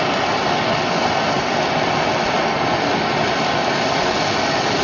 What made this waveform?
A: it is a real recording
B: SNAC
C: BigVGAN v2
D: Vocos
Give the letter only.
A